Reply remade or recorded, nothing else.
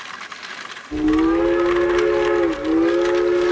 recorded